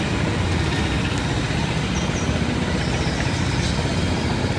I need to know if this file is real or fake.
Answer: real